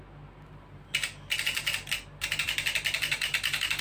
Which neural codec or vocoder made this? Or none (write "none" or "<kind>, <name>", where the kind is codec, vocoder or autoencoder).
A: none